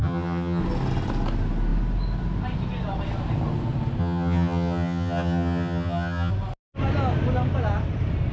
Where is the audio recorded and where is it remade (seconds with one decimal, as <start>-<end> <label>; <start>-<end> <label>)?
0.0-0.6 remade; 0.6-4.0 recorded; 4.0-6.3 remade; 6.3-8.3 recorded